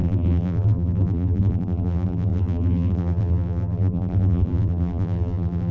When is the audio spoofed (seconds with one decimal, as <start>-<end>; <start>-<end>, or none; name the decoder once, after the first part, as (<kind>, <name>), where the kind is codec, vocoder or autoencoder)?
0.0-5.7 (vocoder, BigVGAN v2)